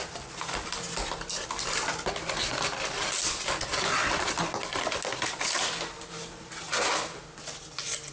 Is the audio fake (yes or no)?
no